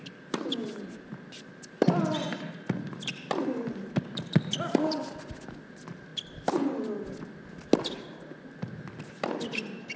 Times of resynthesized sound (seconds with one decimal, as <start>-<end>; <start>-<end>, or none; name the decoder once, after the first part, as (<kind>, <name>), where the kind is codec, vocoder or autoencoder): none